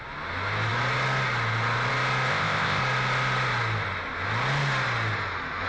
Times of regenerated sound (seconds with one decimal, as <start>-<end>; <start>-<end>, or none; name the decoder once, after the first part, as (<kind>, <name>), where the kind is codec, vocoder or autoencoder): 2.3-2.8 (codec, ZipCodec)